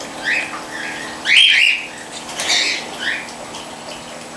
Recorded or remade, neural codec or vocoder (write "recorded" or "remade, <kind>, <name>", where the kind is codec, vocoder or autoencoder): recorded